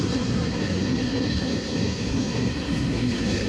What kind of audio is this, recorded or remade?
remade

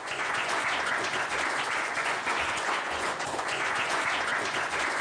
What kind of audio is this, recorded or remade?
remade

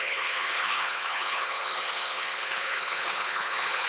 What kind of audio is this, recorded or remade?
remade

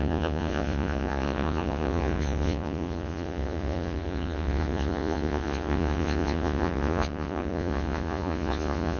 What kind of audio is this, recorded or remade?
remade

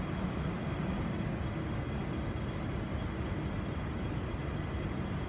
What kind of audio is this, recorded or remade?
recorded